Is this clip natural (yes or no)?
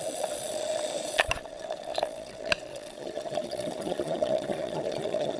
no